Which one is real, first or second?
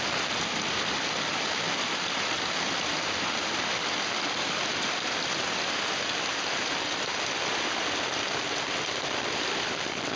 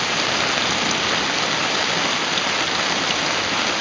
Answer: second